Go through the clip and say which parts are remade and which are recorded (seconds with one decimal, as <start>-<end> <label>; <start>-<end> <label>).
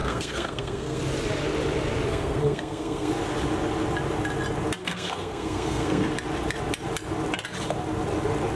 0.0-1.0 remade; 1.0-2.1 recorded; 2.1-3.1 remade; 3.1-4.8 recorded; 4.8-6.1 remade; 6.1-8.6 recorded